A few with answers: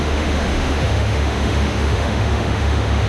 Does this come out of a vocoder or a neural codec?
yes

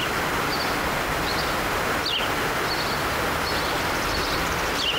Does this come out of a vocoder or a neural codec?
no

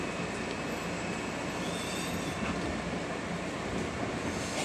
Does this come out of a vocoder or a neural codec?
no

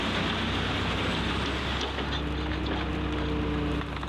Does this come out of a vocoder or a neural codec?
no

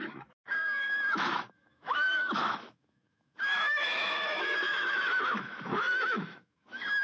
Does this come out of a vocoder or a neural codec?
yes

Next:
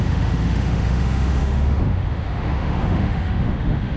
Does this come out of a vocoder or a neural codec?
yes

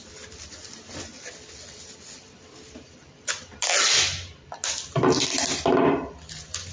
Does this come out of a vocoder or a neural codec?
no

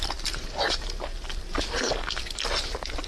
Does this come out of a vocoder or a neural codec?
no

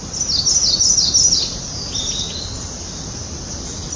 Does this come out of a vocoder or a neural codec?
no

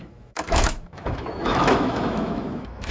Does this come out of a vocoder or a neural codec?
yes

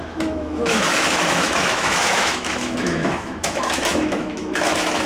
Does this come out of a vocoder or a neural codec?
yes